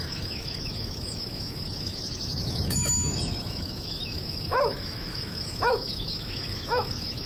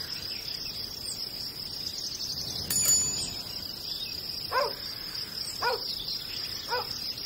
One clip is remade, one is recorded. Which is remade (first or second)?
first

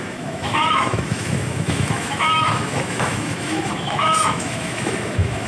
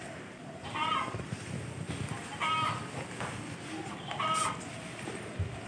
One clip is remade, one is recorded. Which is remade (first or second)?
first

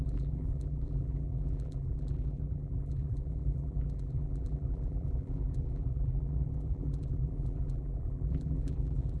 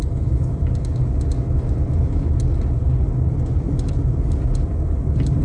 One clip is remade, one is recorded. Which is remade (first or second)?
first